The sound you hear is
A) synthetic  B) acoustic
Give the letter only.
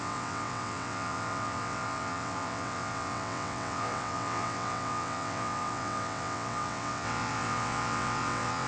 A